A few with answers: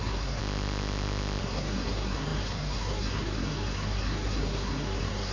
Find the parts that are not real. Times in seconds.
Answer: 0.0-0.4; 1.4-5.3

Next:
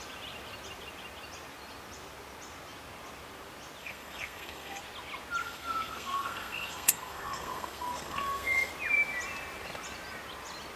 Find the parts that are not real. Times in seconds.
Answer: 3.8-4.8; 5.4-8.7

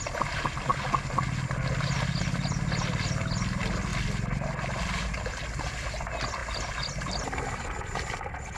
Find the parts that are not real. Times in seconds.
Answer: none

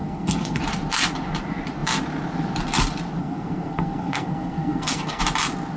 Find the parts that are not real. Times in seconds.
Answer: 0.0-0.6; 3.2-5.2

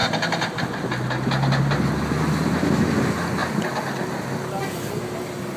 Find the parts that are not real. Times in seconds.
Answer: none

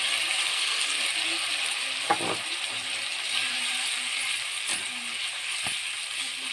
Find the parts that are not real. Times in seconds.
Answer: 0.5-1.0